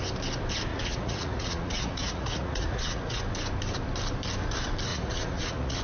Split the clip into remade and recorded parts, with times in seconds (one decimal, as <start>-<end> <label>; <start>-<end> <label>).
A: 0.0-0.7 recorded; 0.7-3.2 remade; 3.2-4.9 recorded; 4.9-5.8 remade